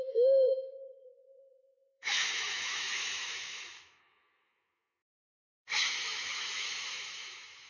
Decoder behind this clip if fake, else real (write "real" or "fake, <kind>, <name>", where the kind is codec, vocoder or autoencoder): fake, autoencoder, DAC-VAE